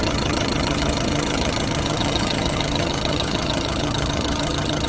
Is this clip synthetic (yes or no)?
yes